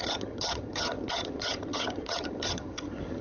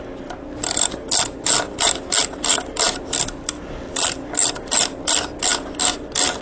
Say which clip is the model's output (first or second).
first